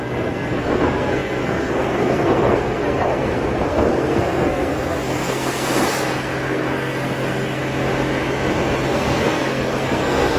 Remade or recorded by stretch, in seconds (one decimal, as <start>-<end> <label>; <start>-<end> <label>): 0.0-7.6 remade; 7.6-8.9 recorded; 8.9-10.4 remade